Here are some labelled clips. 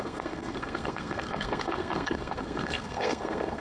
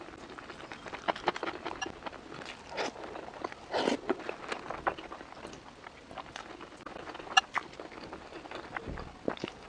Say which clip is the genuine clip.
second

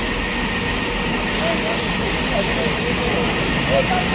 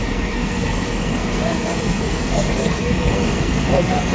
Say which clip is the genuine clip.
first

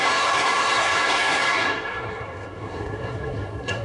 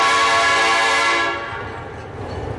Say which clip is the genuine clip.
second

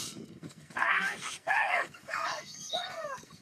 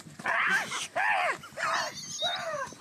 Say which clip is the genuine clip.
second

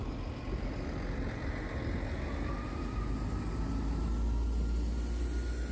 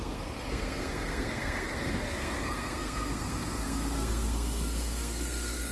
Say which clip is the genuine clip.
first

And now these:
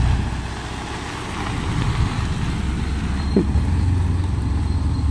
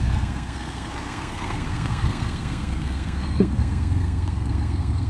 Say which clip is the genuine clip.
first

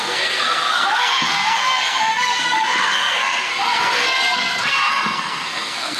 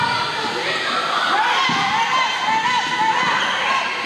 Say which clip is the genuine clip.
second